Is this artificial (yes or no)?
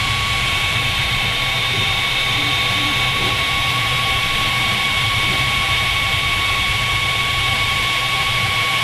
yes